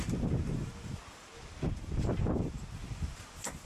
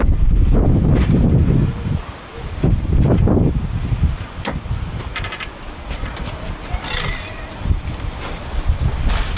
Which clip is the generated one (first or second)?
second